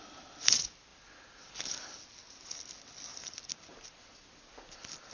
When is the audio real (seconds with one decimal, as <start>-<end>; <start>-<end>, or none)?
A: 0.0-5.1